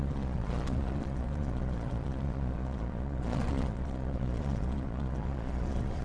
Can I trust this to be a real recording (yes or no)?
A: no